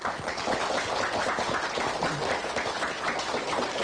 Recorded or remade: recorded